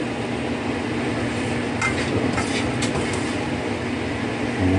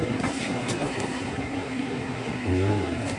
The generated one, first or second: second